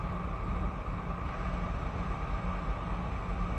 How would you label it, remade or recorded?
recorded